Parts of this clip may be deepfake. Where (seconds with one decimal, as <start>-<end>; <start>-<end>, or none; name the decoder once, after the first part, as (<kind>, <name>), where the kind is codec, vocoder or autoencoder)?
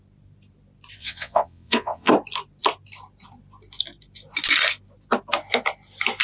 1.0-2.1 (vocoder, WaveNeXt)